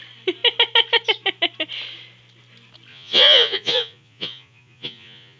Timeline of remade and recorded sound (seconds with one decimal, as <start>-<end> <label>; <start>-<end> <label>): 0.0-2.9 recorded; 2.9-5.4 remade

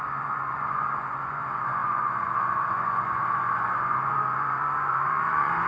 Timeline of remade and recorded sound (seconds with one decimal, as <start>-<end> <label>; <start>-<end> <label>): 0.0-5.7 remade

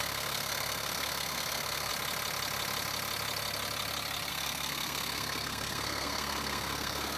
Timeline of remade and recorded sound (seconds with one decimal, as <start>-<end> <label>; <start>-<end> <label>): 0.0-1.9 remade; 1.9-4.3 recorded; 4.3-7.2 remade

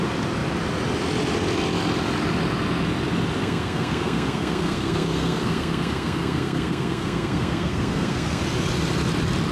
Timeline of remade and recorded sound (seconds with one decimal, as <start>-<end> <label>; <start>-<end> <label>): 0.0-3.4 recorded; 3.4-8.4 remade; 8.4-9.5 recorded